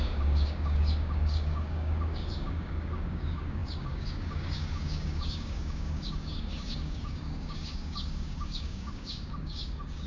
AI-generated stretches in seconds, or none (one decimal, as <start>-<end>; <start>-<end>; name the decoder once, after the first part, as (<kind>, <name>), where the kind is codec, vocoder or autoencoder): 0.0-10.1 (codec, DAC)